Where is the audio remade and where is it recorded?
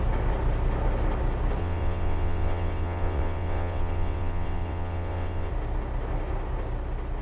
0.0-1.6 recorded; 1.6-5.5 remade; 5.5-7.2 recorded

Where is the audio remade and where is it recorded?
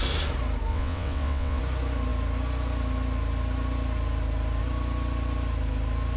0.0-0.7 recorded; 0.7-1.6 remade; 1.6-6.2 recorded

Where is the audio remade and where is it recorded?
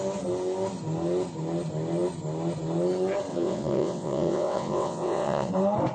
0.0-3.3 recorded; 3.3-5.5 remade; 5.5-5.9 recorded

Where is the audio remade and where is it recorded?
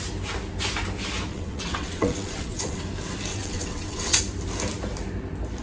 0.0-1.3 recorded; 1.3-2.8 remade; 2.8-3.3 recorded; 3.3-4.2 remade; 4.2-5.6 recorded